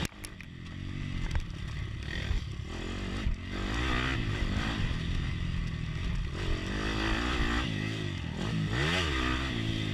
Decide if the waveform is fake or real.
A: real